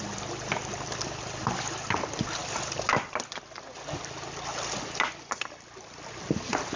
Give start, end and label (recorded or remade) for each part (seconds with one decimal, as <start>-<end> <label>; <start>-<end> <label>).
0.0-6.8 recorded